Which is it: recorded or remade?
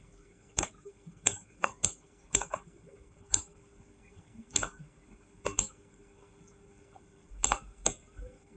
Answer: remade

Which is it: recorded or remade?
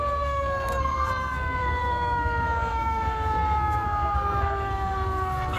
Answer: remade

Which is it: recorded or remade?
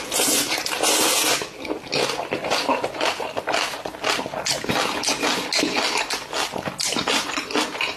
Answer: recorded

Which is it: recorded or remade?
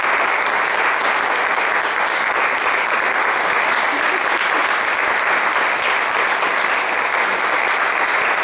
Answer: recorded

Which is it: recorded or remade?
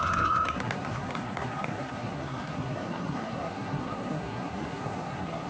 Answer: remade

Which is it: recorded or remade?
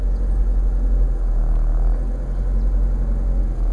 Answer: recorded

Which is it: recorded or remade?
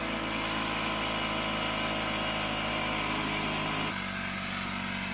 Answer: recorded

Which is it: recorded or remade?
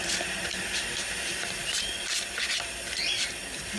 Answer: recorded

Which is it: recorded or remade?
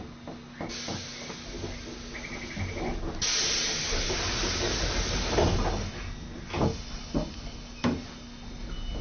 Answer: recorded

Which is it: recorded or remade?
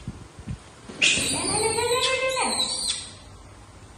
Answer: recorded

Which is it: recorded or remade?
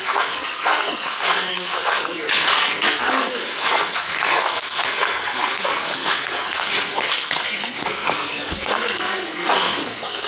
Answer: remade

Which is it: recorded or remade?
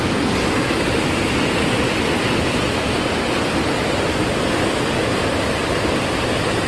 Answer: recorded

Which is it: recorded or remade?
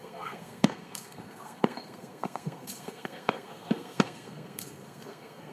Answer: remade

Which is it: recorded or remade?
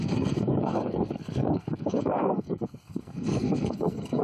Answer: remade